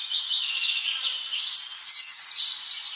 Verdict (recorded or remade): recorded